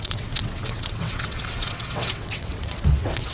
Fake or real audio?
fake